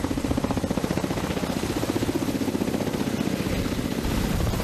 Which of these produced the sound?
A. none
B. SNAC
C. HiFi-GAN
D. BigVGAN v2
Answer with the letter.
A